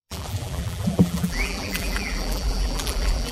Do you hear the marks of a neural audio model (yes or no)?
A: yes